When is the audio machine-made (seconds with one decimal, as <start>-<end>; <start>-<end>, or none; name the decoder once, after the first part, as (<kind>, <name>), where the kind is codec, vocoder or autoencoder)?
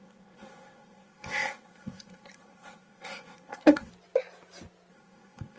0.0-3.9 (codec, SNAC); 4.9-5.6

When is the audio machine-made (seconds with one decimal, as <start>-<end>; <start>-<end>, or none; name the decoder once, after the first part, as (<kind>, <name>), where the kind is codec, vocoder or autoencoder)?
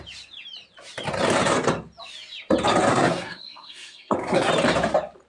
2.9-4.5 (codec, SNAC)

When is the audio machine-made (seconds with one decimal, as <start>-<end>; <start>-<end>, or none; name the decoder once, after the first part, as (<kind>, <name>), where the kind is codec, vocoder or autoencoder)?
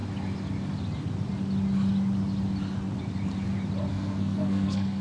3.9-5.0 (codec, SNAC)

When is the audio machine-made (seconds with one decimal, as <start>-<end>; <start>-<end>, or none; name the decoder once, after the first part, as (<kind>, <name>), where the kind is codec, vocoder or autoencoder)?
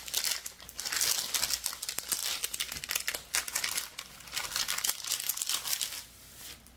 none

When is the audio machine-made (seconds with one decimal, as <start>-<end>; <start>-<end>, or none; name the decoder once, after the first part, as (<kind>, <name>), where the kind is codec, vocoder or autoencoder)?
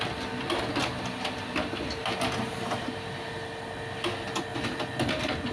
none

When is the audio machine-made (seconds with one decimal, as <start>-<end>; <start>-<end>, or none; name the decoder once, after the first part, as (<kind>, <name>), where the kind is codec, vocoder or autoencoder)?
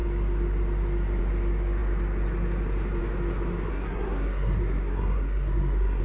3.7-6.0 (codec, SNAC)